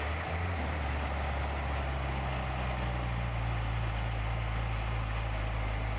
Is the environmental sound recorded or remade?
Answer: recorded